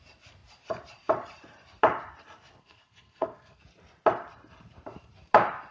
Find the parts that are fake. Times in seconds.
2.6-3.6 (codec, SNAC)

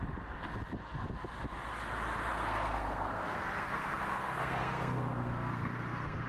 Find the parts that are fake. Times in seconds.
2.3-6.3 (codec, SNAC)

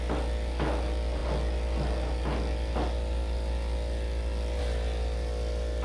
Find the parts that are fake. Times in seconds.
none